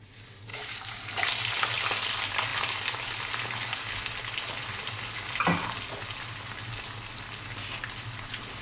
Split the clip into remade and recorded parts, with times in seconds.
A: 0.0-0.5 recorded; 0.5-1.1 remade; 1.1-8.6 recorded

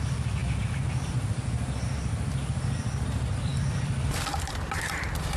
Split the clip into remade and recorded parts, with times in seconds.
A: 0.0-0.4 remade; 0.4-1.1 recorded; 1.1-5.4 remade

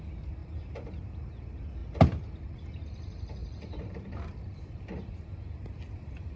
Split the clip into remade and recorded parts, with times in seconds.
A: 0.0-0.4 recorded; 0.4-1.1 remade; 1.1-3.4 recorded; 3.4-4.8 remade; 4.8-6.4 recorded